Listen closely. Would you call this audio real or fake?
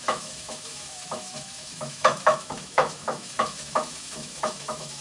fake